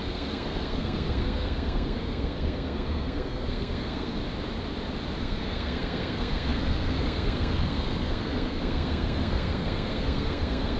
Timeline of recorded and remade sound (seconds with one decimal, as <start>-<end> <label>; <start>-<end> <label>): 0.0-4.2 remade; 4.2-5.2 recorded; 5.2-10.8 remade